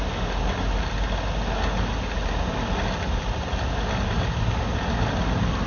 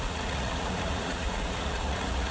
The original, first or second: first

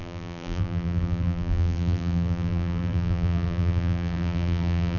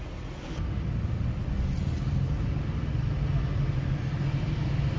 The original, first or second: second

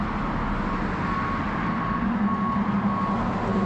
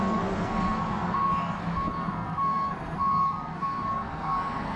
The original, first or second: first